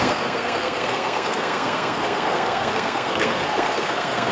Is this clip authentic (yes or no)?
no